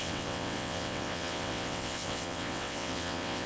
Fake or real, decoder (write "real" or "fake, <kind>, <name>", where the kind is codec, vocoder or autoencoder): fake, vocoder, WaveNeXt